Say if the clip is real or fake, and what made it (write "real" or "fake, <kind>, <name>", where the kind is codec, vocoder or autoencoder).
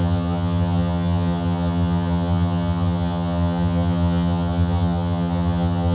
fake, vocoder, HiFi-GAN